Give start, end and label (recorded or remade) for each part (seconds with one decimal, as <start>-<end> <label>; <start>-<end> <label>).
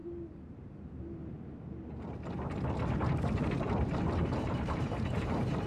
0.0-3.4 recorded; 3.4-5.7 remade